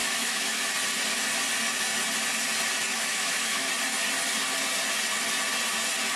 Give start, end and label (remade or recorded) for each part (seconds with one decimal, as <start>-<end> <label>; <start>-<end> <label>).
0.0-0.6 remade; 0.6-2.9 recorded; 2.9-3.7 remade; 3.7-6.2 recorded